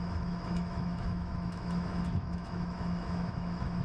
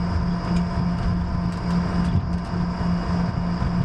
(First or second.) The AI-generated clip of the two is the first